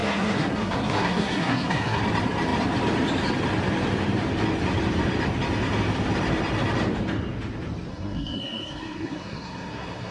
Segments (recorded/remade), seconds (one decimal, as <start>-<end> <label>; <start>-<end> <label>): 0.0-2.0 remade; 2.0-7.9 recorded; 7.9-10.1 remade